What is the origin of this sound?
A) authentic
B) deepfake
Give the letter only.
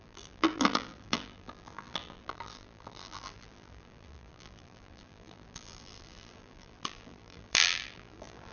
B